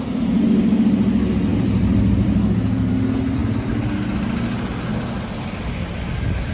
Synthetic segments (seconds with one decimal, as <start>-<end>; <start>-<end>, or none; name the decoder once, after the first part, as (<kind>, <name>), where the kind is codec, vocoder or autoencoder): 1.5-2.9 (vocoder, BigVGAN v2)